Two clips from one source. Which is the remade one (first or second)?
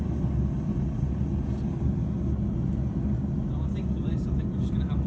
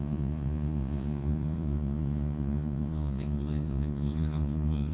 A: second